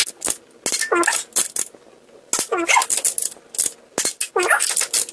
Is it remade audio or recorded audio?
recorded